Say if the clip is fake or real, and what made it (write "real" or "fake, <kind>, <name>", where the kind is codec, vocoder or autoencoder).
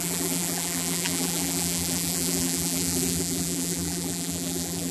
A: fake, vocoder, BigVGAN v2